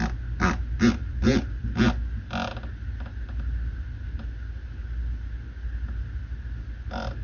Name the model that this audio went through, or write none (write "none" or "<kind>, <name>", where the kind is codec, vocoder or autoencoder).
none